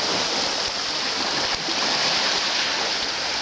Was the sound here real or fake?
real